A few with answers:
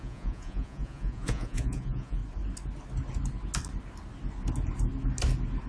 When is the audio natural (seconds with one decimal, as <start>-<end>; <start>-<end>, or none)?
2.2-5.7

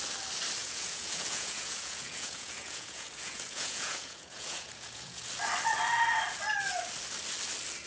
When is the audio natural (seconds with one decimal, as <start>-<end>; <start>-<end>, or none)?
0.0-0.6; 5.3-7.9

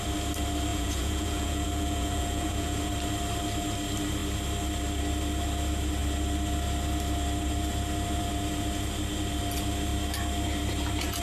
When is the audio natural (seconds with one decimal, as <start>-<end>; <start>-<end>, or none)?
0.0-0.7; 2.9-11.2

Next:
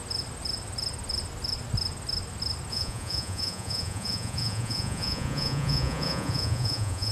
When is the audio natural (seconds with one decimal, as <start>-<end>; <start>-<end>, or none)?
0.0-2.7

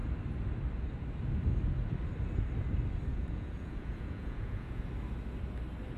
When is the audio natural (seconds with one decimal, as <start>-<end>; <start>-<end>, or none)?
0.0-3.1; 4.8-6.0

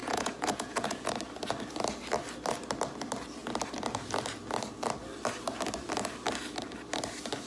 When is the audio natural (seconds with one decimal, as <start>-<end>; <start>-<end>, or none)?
1.1-7.5

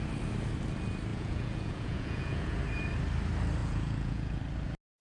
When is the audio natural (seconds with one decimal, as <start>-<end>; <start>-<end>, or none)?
0.0-1.1; 2.6-3.6; 4.4-5.0